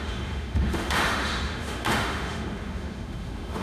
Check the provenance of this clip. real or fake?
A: fake